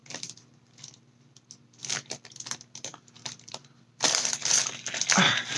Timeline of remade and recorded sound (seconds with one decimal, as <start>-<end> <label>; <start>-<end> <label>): 0.0-2.9 recorded; 2.9-4.3 remade; 4.3-5.6 recorded